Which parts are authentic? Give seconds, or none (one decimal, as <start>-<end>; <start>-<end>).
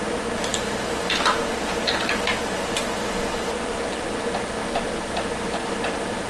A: 0.0-6.3